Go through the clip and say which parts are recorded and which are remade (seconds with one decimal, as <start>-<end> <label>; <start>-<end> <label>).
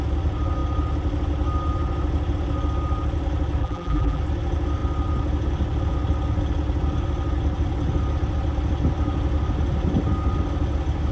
0.0-3.6 recorded; 3.6-4.2 remade; 4.2-11.1 recorded